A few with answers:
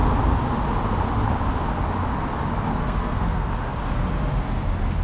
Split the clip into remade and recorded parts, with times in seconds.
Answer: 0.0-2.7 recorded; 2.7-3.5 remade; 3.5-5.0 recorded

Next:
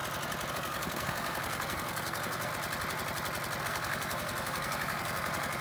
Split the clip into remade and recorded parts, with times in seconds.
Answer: 0.0-0.5 recorded; 0.5-2.5 remade; 2.5-3.6 recorded; 3.6-5.6 remade